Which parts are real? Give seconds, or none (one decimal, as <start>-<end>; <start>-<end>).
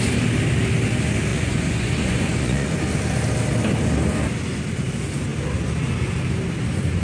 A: 0.0-1.3; 2.8-7.0